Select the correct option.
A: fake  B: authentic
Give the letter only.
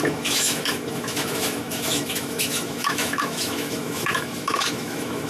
A